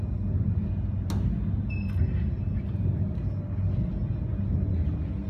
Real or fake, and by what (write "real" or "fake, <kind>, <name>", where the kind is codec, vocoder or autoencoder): real